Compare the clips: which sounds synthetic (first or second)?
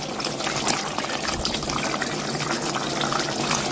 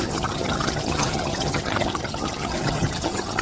second